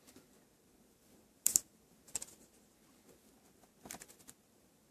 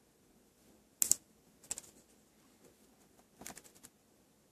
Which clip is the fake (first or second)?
first